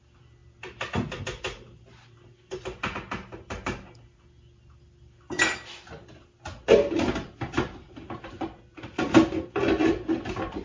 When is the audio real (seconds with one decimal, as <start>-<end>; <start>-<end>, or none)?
0.0-10.6